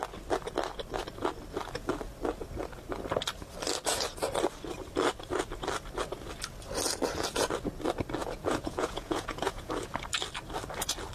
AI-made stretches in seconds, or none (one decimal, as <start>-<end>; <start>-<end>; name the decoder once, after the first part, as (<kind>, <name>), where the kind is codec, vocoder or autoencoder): 8.2-9.7 (vocoder, Vocos)